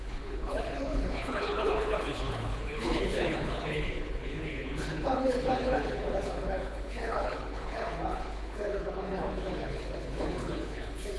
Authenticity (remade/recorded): remade